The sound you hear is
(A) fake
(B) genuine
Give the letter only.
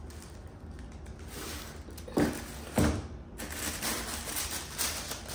B